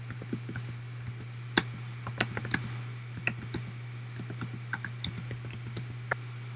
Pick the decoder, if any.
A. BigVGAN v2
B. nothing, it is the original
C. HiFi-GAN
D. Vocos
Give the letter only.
B